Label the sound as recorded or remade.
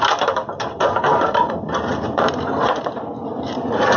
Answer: remade